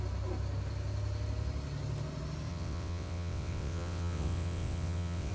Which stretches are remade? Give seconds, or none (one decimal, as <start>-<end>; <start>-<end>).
2.5-5.3